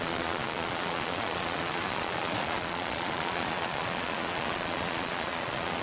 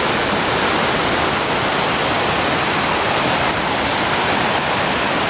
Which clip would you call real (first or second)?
second